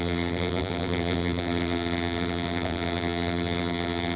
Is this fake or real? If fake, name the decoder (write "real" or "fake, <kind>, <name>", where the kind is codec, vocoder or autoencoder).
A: fake, vocoder, BigVGAN v2